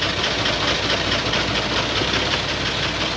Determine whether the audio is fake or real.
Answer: real